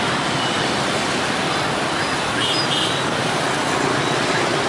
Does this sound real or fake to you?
real